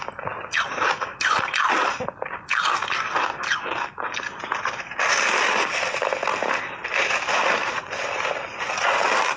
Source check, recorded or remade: recorded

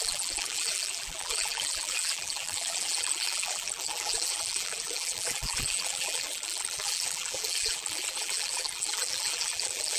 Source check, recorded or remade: remade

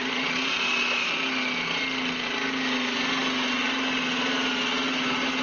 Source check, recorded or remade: recorded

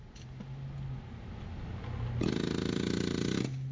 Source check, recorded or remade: recorded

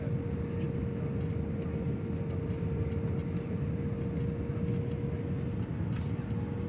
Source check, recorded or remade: recorded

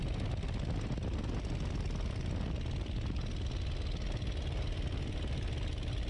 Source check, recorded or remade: recorded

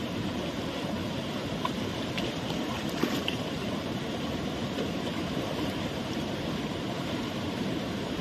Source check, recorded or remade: remade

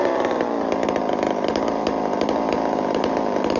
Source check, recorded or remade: remade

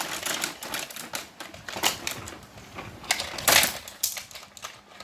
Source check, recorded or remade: recorded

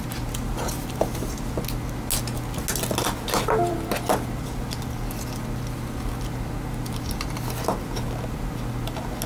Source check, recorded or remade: recorded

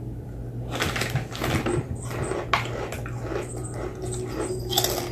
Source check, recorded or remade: recorded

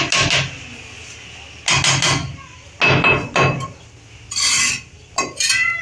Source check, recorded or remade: recorded